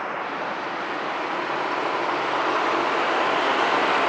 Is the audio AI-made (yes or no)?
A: no